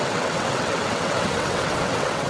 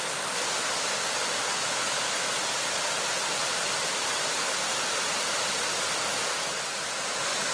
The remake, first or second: first